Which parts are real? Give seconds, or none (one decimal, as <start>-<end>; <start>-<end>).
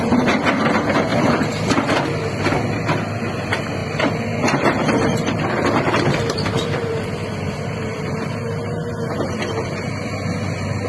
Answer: 0.0-1.1; 1.9-3.8; 8.3-10.9